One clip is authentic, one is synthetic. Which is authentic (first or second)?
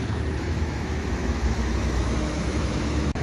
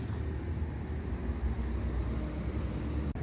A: second